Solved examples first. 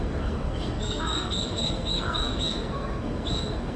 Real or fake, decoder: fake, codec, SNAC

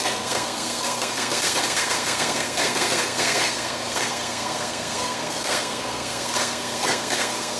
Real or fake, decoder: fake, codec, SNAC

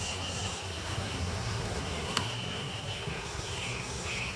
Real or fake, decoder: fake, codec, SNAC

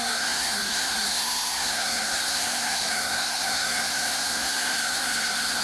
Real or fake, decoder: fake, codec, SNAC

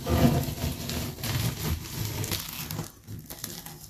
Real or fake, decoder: real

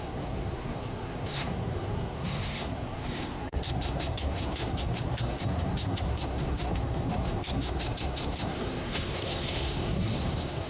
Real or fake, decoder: fake, codec, SNAC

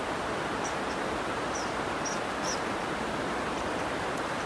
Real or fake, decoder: real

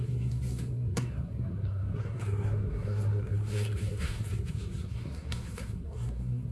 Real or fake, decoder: fake, codec, SNAC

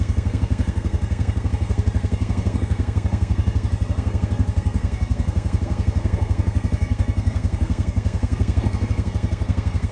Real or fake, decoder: fake, codec, SNAC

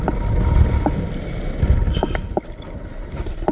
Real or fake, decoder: real